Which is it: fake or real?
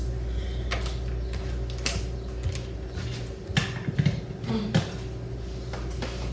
real